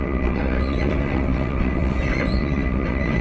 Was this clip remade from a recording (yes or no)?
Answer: yes